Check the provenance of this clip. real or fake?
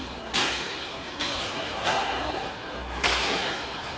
fake